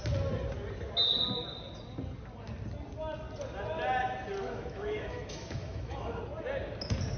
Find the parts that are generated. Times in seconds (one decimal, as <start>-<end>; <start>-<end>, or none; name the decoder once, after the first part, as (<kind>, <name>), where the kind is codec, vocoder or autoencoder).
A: 4.4-6.2 (autoencoder, DAC-VAE)